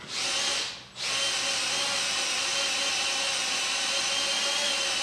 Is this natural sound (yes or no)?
yes